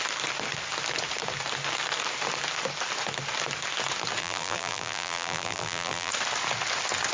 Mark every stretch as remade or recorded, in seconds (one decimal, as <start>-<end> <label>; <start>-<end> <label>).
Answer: 0.0-4.2 recorded; 4.2-6.1 remade; 6.1-7.1 recorded